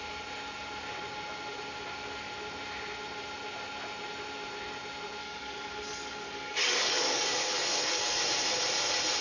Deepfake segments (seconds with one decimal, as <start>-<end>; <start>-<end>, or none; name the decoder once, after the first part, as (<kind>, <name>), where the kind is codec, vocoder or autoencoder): 5.2-8.2 (codec, DAC)